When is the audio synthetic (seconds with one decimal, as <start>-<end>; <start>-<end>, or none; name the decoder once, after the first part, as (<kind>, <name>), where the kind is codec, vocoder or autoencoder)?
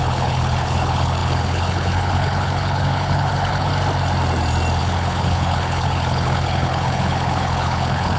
0.0-3.7 (codec, HILCodec); 4.8-8.2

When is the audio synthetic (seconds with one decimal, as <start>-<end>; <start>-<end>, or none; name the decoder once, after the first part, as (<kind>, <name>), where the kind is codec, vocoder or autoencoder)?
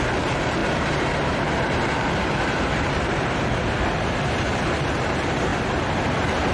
0.0-5.5 (vocoder, BigVGAN v2)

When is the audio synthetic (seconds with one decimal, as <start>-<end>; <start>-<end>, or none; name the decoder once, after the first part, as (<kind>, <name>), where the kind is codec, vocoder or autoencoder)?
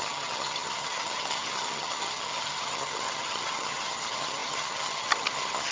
0.0-5.7 (vocoder, HiFi-GAN)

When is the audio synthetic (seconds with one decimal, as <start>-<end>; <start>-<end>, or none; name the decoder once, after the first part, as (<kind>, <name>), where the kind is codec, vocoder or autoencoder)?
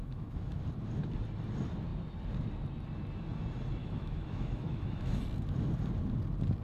0.0-0.6 (autoencoder, DAC-VAE); 3.8-5.2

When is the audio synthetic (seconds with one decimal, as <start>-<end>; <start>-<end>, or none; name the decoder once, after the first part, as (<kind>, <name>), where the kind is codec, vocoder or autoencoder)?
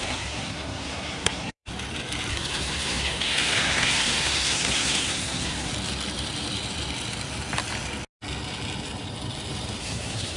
0.0-1.7 (codec, SNAC); 2.3-5.7; 9.8-10.4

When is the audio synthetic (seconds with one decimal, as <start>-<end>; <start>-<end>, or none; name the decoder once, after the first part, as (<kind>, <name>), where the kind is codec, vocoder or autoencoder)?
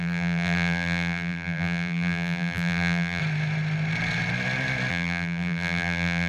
0.0-3.2 (vocoder, BigVGAN v2); 4.9-6.3